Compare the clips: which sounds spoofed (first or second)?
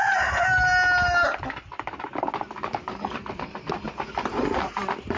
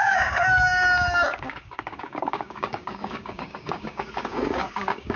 second